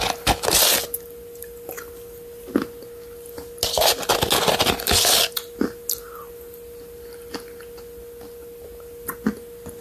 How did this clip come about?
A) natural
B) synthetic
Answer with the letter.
A